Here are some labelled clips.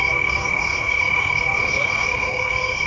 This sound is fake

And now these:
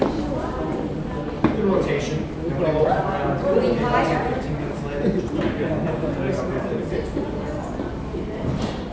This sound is real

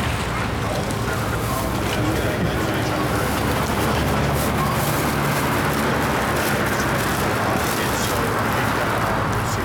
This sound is real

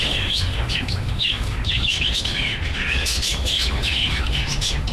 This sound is fake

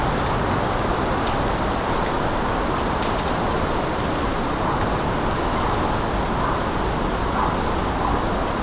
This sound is real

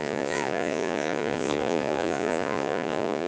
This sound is fake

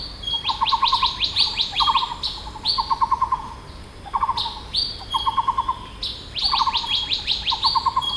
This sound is real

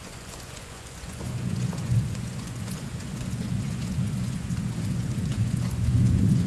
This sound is fake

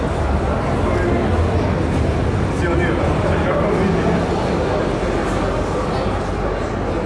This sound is real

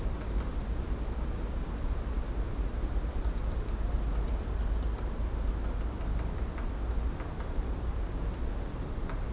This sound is real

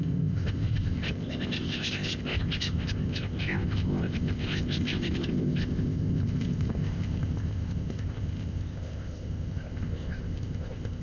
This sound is fake